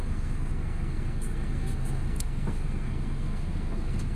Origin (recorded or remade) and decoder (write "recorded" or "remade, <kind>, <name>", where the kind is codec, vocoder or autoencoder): remade, codec, SNAC